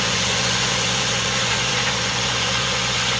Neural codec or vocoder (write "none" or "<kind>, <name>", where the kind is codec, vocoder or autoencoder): vocoder, Vocos